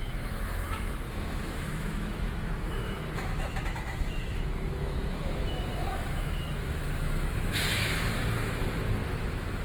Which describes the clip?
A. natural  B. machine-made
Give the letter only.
B